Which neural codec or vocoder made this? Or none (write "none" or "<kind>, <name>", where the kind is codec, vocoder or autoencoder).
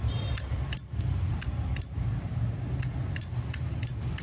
none